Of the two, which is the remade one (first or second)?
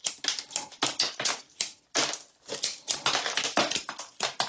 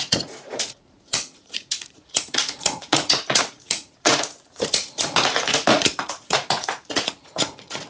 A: second